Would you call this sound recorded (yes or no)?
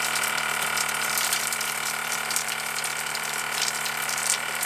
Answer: no